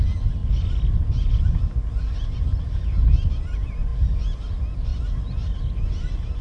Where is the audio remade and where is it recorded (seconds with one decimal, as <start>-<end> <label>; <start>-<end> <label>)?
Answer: 0.0-6.4 recorded